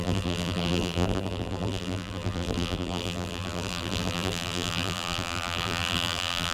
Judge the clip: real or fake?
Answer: fake